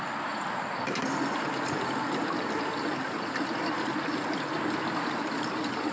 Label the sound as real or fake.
real